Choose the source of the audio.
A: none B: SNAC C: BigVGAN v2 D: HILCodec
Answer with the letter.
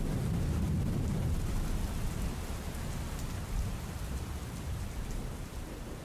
A